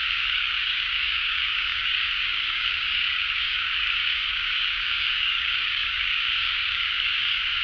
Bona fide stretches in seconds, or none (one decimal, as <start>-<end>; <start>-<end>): none